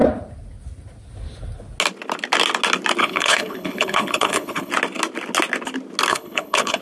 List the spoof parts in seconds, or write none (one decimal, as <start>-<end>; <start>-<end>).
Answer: 3.0-4.7; 6.1-6.8